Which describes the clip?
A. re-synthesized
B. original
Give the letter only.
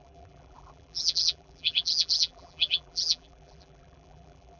A